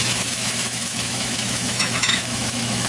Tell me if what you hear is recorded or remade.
remade